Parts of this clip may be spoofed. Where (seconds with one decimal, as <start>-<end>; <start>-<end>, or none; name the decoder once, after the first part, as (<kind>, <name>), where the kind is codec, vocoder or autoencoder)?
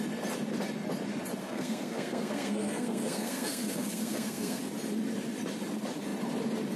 1.4-4.6 (codec, SNAC)